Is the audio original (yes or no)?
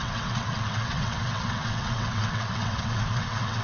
no